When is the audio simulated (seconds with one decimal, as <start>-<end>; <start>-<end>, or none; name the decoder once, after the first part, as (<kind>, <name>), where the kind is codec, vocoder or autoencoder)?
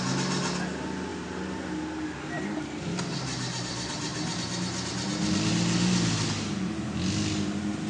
1.1-3.0 (vocoder, BigVGAN v2)